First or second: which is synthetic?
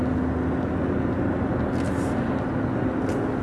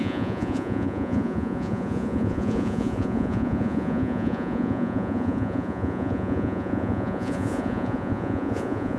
second